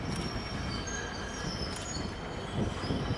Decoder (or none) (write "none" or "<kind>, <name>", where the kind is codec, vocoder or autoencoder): none